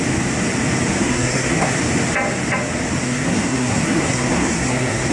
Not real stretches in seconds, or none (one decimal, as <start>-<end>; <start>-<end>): 1.0-1.8; 3.0-5.1